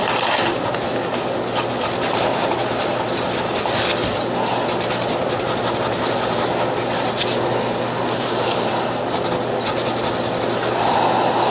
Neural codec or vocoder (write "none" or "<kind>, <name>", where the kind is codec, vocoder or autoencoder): none